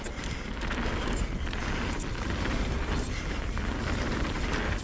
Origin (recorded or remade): recorded